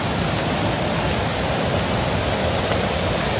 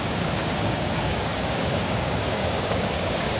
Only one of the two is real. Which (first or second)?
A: first